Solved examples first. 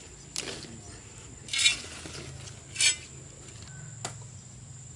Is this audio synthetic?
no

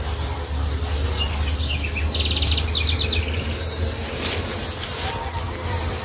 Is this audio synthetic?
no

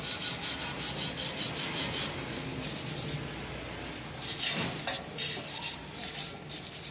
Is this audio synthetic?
no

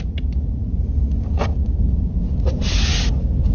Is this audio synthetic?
no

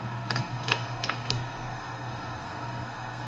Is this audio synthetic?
yes